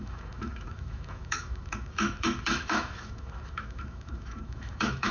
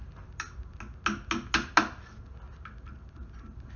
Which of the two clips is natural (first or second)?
second